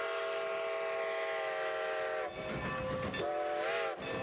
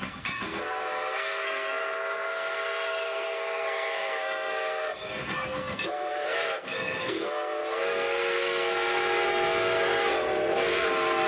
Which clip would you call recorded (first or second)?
first